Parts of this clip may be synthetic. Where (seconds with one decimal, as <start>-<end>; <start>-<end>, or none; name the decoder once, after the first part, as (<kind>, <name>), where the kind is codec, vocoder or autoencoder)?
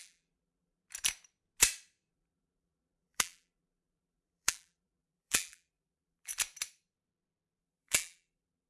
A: 0.0-0.8 (vocoder, BigVGAN v2); 2.1-6.3; 7.6-8.7